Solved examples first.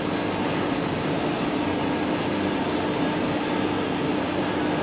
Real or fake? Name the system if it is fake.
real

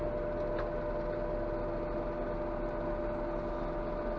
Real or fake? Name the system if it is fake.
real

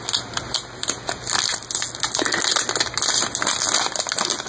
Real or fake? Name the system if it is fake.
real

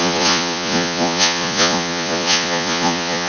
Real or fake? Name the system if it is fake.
fake, vocoder, Vocos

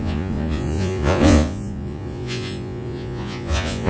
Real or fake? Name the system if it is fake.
fake, vocoder, Vocos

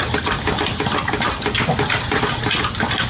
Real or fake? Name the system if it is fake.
real